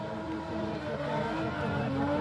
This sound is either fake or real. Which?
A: real